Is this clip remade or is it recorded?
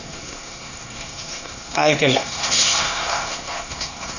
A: remade